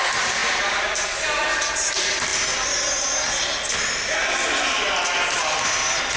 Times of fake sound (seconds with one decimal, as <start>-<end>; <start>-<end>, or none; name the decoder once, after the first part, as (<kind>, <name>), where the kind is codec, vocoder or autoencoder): 0.0-2.3 (vocoder, BigVGAN v2)